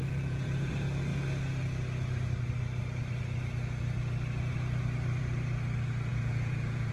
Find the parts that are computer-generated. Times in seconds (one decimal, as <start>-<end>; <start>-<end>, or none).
0.0-0.7; 6.1-6.9